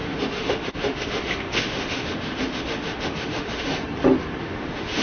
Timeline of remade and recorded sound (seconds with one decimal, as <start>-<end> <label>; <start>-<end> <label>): 0.0-3.7 remade; 3.7-4.4 recorded; 4.4-5.0 remade